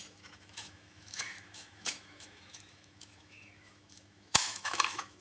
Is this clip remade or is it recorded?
remade